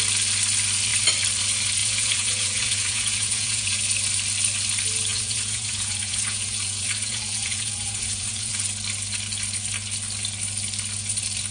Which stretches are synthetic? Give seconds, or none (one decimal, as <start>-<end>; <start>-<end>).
1.8-3.8; 5.1-8.5